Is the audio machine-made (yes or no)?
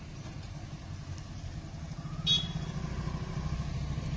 no